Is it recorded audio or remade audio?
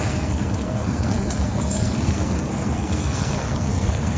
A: remade